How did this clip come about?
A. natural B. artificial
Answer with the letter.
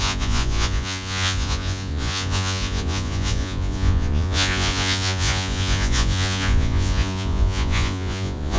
B